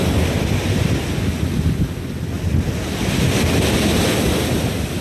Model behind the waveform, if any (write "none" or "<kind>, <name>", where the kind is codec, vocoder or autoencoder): none